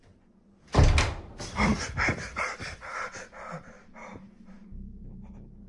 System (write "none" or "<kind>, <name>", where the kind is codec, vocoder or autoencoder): none